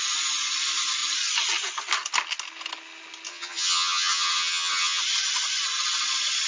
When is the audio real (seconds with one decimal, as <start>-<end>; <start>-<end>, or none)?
0.0-3.3; 5.0-6.5